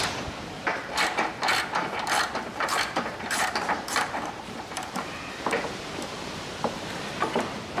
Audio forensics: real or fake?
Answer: fake